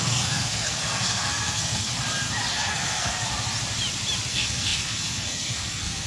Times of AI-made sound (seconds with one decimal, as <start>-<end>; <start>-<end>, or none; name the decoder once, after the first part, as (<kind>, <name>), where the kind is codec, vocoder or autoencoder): 0.0-1.9 (codec, SNAC); 2.5-3.1; 4.3-6.1